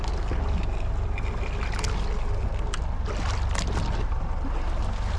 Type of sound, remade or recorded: recorded